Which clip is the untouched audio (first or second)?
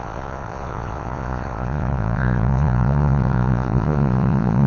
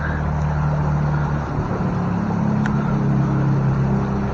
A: second